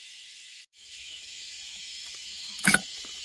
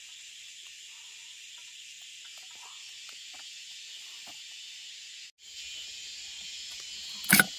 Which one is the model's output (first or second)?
first